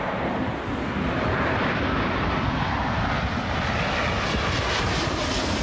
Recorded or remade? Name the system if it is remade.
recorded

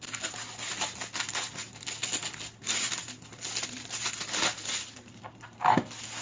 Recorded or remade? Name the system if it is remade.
recorded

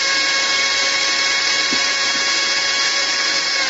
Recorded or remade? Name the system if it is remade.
remade, vocoder, BigVGAN v2